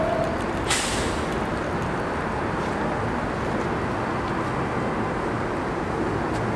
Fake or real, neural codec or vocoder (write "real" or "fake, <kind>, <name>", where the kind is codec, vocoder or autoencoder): real